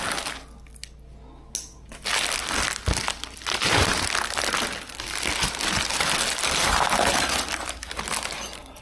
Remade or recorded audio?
recorded